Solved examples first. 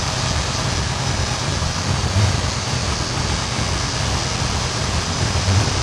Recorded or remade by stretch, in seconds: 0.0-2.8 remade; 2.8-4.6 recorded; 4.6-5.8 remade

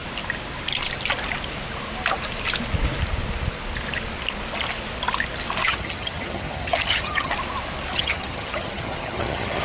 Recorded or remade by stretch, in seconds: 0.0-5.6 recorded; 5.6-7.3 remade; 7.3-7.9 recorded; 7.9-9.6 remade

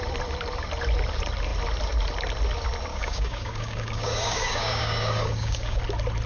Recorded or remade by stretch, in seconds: 0.0-2.9 recorded; 2.9-5.8 remade; 5.8-6.3 recorded

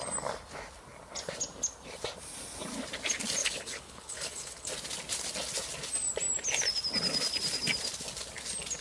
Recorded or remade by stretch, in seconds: 0.0-3.4 recorded; 3.4-4.7 remade; 4.7-8.8 recorded

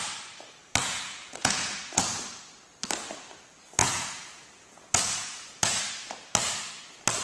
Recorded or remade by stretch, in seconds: 0.0-0.8 recorded; 0.8-2.0 remade; 2.0-3.8 recorded; 3.8-5.8 remade; 5.8-7.2 recorded